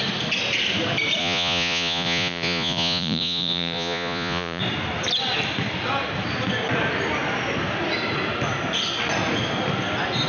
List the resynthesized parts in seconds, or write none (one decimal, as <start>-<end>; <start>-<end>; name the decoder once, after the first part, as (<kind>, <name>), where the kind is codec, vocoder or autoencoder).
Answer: 1.2-4.6 (vocoder, Vocos)